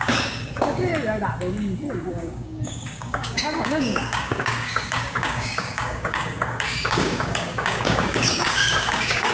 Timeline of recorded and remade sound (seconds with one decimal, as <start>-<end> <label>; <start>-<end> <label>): 0.0-0.9 remade; 0.9-2.1 recorded; 2.1-9.3 remade